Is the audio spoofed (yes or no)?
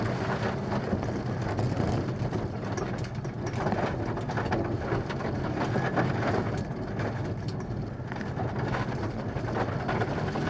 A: no